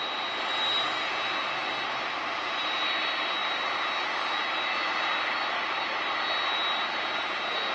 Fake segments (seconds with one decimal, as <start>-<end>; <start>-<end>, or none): none